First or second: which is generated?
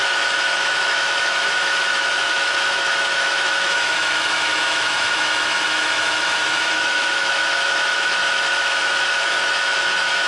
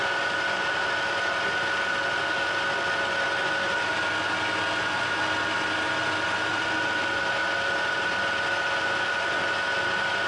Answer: first